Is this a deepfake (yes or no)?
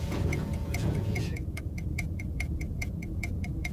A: yes